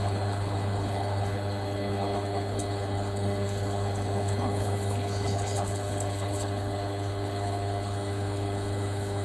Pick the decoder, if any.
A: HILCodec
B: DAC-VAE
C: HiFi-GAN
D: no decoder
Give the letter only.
A